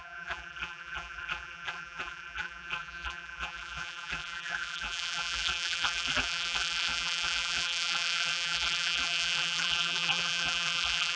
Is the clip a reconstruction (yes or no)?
yes